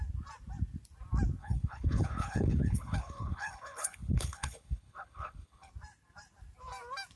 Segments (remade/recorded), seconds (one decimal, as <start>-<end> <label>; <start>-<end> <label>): 0.0-1.4 recorded; 1.4-5.7 remade; 5.7-7.2 recorded